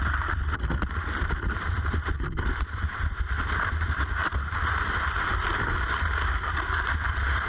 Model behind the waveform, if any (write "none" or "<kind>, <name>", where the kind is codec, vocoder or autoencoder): vocoder, BigVGAN v2